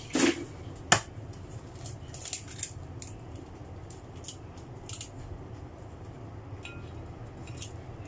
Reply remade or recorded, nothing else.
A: recorded